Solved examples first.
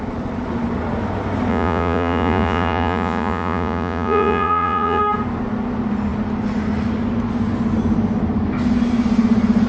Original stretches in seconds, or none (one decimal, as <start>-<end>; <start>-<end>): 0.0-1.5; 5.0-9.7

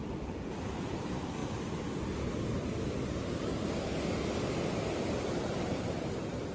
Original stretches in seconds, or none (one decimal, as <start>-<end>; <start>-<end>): 1.4-4.8

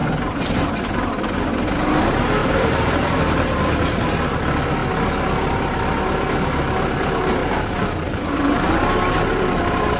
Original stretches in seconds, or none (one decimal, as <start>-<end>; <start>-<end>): 0.0-2.4; 3.2-7.4; 9.4-10.0